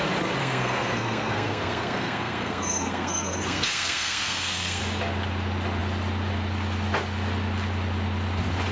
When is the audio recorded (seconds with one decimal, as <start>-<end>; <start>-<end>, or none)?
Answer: 0.0-0.4; 4.8-8.7